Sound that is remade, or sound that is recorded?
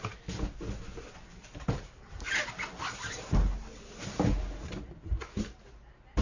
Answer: recorded